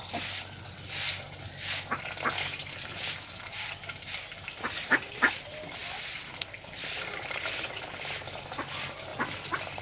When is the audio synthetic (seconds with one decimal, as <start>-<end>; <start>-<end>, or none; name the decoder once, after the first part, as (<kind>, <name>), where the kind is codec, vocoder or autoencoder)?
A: none